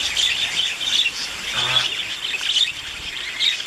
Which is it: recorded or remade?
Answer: recorded